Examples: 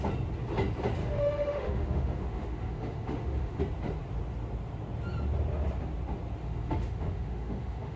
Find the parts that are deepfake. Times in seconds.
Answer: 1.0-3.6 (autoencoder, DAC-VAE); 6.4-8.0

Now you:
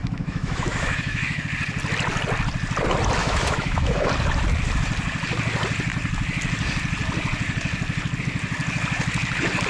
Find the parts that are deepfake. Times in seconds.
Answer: 0.0-1.4 (autoencoder, DAC-VAE); 3.2-4.1

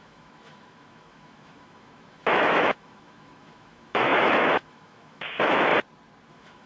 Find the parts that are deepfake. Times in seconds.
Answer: 0.0-5.7 (autoencoder, DAC-VAE); 6.3-6.7

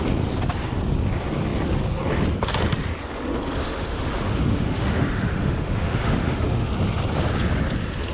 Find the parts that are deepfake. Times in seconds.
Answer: 3.6-6.7 (autoencoder, DAC-VAE)

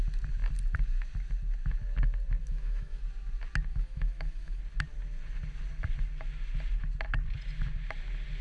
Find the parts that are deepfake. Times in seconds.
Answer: 2.4-3.0 (autoencoder, DAC-VAE); 3.7-4.6

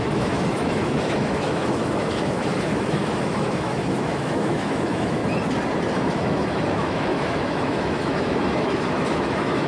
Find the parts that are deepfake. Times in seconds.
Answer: 0.0-5.2 (autoencoder, DAC-VAE); 6.1-9.7

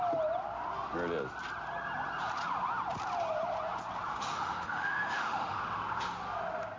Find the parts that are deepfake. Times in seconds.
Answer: 4.1-5.6 (autoencoder, DAC-VAE)